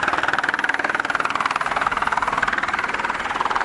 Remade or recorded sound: recorded